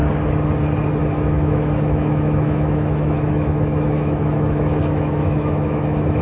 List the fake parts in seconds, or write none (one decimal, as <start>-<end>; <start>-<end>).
1.0-6.2